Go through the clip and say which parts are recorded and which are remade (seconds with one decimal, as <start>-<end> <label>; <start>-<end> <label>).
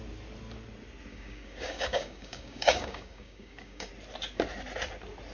0.0-1.1 recorded; 1.1-3.9 remade; 3.9-5.3 recorded